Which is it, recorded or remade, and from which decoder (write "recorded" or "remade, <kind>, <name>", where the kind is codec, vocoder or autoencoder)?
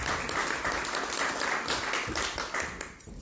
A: recorded